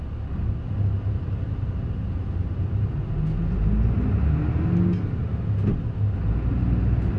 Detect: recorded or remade recorded